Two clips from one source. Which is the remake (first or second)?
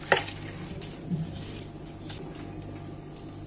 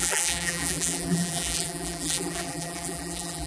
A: second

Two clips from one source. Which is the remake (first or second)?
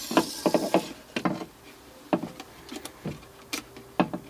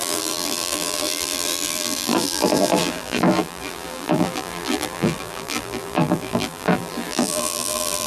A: second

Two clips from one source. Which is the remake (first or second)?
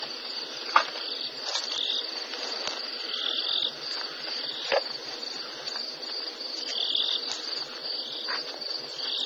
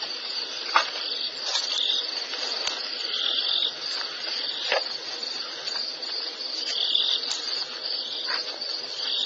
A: second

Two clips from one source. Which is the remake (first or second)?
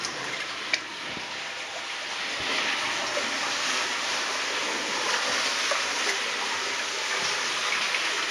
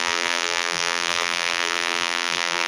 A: second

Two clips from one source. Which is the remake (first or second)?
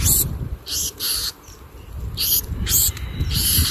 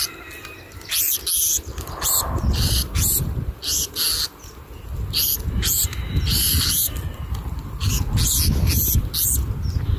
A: first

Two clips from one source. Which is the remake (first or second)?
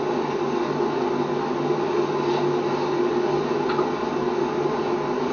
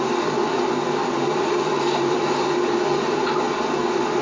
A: second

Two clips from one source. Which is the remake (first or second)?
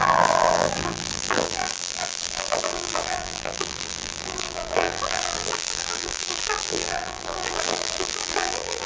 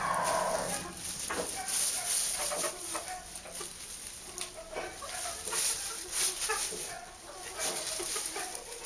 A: first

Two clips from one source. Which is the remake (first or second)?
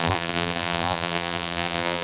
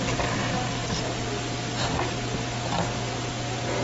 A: first